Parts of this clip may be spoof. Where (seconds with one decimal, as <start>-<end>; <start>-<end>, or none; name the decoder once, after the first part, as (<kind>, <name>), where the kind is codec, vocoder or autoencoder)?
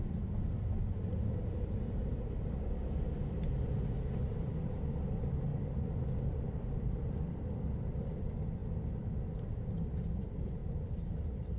5.5-8.0 (vocoder, BigVGAN v2); 10.6-11.6